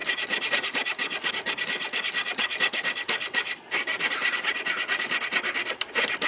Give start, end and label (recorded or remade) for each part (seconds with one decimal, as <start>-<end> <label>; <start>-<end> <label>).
0.0-6.3 recorded